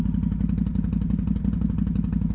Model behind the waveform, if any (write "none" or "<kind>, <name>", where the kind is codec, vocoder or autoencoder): none